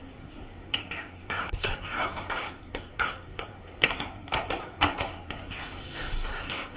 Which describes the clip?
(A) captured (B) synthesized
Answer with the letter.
B